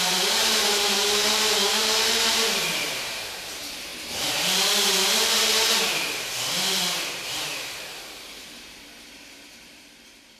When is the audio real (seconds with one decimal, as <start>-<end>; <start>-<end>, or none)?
none